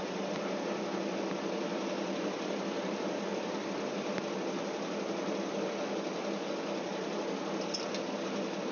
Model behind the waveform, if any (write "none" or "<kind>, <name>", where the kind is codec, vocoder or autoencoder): none